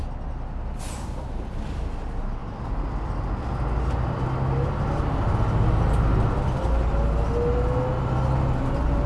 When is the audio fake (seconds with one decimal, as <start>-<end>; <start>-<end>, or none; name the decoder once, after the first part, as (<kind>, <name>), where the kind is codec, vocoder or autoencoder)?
none